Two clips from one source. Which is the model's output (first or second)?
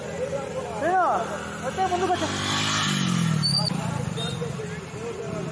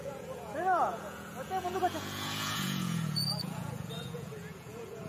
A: second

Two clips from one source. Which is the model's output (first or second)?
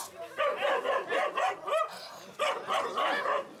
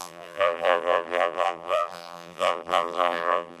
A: second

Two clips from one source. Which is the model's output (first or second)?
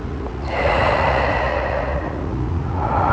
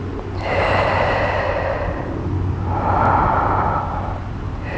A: first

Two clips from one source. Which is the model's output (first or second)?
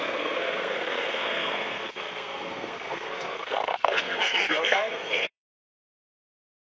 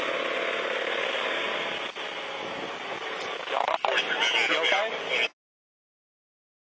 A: first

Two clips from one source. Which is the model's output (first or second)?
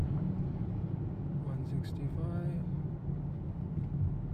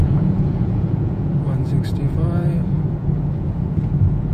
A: second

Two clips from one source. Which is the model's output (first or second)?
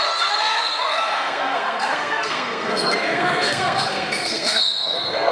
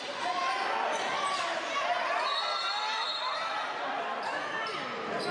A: first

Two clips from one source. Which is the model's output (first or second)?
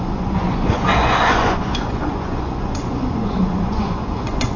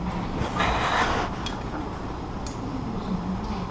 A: first